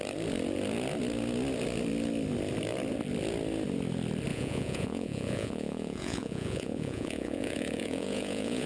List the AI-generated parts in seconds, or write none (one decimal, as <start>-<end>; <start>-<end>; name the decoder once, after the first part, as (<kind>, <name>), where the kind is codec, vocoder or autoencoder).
4.3-8.7 (vocoder, Vocos)